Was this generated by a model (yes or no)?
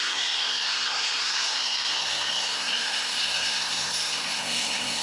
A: yes